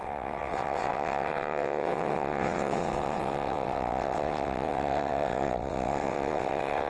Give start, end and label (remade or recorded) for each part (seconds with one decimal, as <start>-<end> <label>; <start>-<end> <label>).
0.0-6.9 remade